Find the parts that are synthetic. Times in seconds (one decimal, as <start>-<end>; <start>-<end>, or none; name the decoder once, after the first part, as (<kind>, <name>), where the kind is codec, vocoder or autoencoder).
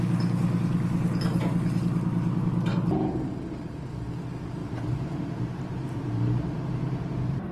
4.6-7.5 (vocoder, BigVGAN v2)